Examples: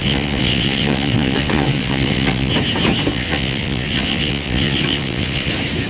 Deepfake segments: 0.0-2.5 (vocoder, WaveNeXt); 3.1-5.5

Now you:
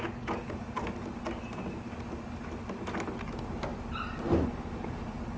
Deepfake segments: none

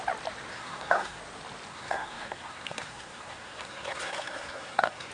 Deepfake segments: 0.5-1.2 (codec, SNAC); 1.7-5.1

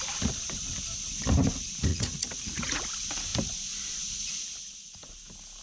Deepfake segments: 1.9-2.8 (vocoder, Vocos)

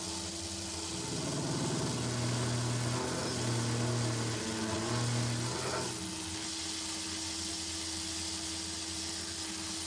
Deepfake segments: none

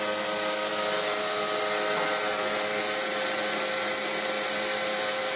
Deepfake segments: none

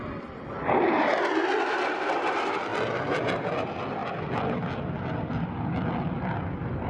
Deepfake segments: none

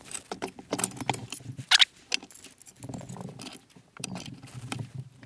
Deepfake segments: none